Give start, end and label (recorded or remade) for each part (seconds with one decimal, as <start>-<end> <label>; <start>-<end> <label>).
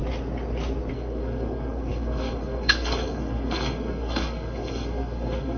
0.0-0.9 recorded; 0.9-5.6 remade